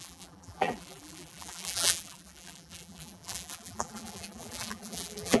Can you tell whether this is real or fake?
fake